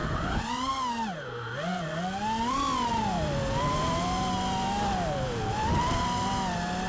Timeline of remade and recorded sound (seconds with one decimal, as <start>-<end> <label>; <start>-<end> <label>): 0.0-0.7 remade; 0.7-6.9 recorded